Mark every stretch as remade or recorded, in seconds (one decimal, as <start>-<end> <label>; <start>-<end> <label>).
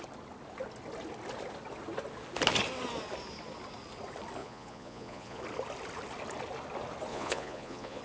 0.0-4.4 recorded; 4.4-5.4 remade; 5.4-7.1 recorded; 7.1-8.0 remade